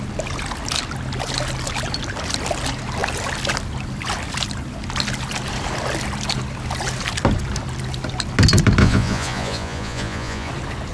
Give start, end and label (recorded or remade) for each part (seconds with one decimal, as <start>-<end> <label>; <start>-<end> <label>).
0.0-8.8 recorded; 8.8-10.5 remade; 10.5-10.9 recorded